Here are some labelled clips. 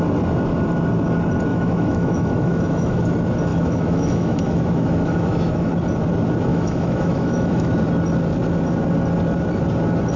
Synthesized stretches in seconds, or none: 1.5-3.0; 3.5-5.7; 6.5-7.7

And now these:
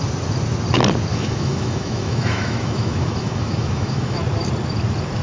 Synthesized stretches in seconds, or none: 1.1-4.2

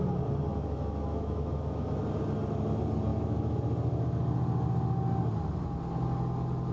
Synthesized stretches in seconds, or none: 0.5-2.0; 3.1-3.6

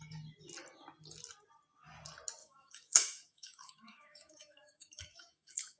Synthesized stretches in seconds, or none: 2.4-5.8

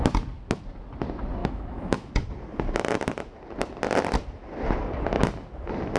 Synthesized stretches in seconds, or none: 1.4-2.1

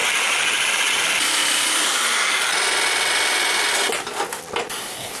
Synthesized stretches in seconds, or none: none